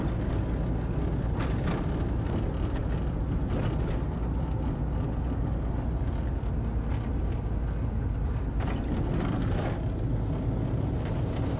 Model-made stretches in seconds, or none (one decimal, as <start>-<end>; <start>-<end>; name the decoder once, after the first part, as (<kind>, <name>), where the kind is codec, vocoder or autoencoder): none